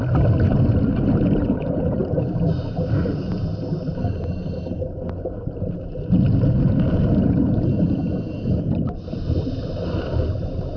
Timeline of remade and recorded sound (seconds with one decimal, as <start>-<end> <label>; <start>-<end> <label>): 0.0-10.8 recorded